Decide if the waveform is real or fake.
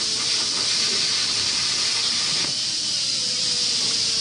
real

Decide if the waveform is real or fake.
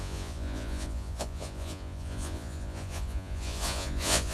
fake